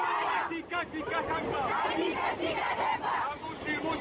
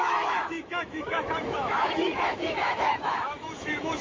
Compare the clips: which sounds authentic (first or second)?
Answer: first